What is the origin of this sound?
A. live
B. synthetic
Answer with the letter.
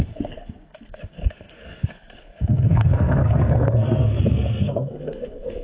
B